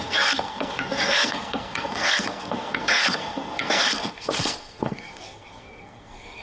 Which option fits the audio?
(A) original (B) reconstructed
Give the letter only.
B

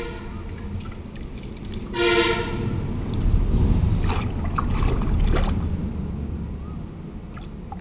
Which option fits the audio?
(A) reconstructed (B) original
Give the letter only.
B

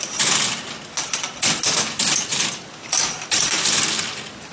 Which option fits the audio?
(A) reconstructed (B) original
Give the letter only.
B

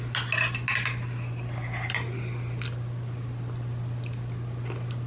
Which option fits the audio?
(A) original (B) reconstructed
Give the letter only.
A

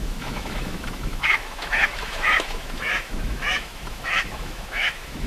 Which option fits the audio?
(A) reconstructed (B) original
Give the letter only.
A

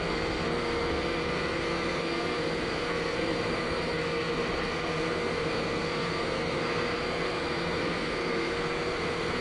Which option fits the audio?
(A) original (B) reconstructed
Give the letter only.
B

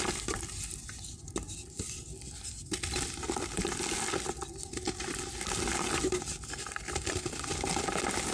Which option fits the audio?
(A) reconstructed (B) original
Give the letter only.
B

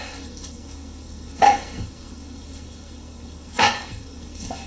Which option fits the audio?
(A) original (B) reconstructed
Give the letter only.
B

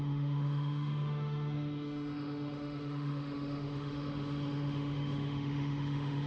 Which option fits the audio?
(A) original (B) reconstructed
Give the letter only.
B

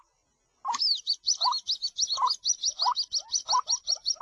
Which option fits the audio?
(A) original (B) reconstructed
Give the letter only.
A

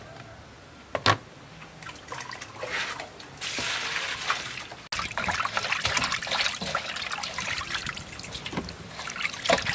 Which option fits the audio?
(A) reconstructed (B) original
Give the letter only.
B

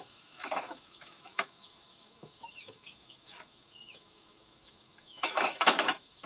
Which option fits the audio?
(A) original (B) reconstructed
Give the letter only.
B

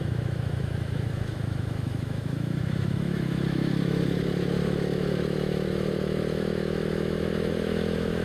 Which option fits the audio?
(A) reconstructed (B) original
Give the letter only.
A